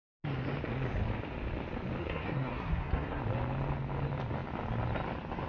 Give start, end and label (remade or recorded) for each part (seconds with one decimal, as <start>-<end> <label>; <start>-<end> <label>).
0.0-2.0 recorded; 2.0-3.2 remade; 3.2-5.5 recorded